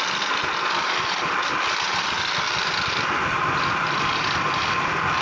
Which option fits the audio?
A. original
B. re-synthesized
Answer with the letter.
A